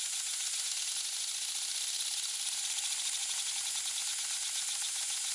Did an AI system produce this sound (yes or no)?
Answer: no